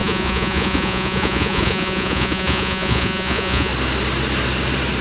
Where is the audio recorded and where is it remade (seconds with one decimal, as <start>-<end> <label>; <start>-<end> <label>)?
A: 0.0-3.7 remade; 3.7-5.0 recorded